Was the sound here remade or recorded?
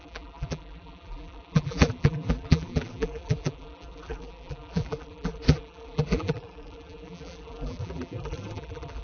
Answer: remade